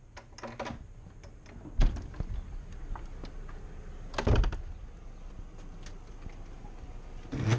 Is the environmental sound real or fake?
real